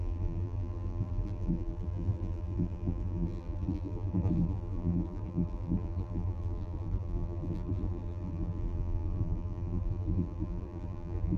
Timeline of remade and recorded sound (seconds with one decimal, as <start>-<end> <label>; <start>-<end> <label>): 0.0-11.4 remade